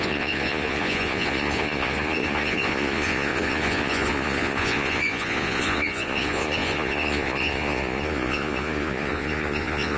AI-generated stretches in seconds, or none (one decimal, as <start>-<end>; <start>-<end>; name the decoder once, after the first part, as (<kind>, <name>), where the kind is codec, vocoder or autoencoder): 0.0-10.0 (vocoder, Vocos)